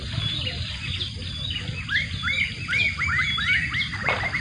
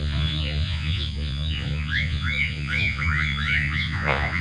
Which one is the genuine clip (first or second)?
first